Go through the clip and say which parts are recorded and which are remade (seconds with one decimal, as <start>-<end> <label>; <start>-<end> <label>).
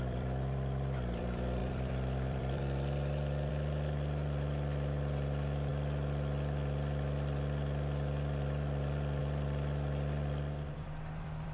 0.0-5.7 remade; 5.7-9.2 recorded; 9.2-11.5 remade